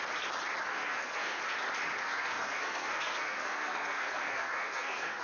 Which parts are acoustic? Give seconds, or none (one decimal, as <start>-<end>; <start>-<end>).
0.0-0.7; 1.4-2.0